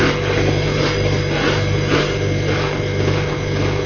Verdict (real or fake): real